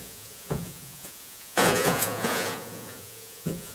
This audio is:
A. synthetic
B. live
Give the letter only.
A